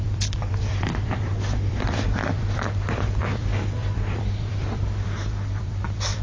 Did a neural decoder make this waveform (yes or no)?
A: yes